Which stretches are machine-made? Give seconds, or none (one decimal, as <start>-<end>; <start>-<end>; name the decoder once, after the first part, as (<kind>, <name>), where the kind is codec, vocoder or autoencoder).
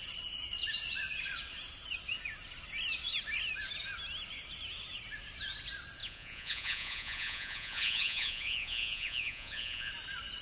6.0-9.9 (vocoder, Vocos)